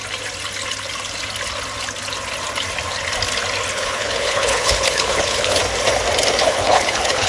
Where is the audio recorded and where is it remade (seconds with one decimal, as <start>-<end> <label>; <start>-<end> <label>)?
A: 0.0-3.7 recorded; 3.7-5.6 remade; 5.6-6.4 recorded; 6.4-7.3 remade